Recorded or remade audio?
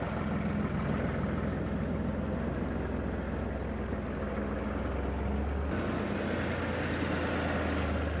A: recorded